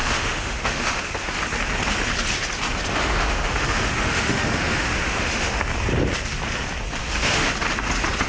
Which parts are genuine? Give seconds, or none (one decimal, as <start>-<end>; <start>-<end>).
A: 1.1-2.9; 5.7-7.0; 7.5-8.3